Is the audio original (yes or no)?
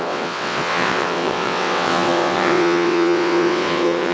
no